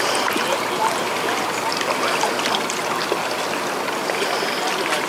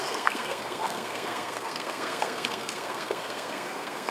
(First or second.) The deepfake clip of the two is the second